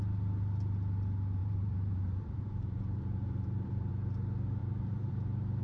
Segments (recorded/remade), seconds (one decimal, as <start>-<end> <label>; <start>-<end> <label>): 0.0-1.4 recorded; 1.4-3.9 remade; 3.9-4.6 recorded; 4.6-5.1 remade; 5.1-5.6 recorded